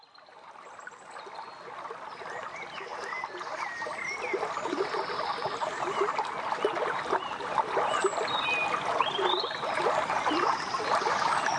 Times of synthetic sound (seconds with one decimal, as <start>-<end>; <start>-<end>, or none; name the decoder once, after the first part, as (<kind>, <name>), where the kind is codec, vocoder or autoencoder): none